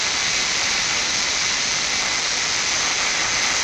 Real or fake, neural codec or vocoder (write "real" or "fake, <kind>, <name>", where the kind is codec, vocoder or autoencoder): fake, vocoder, BigVGAN v2